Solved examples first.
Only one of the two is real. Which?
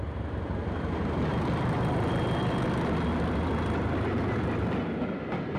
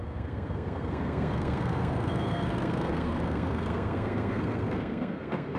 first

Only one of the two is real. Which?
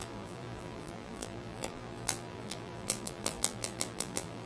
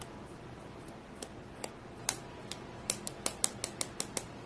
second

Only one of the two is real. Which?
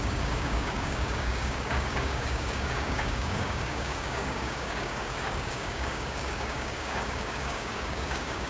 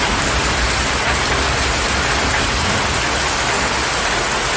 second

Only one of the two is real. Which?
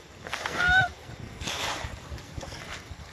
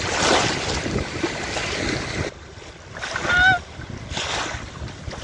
second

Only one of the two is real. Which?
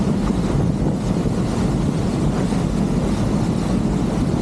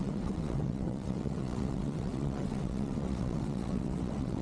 first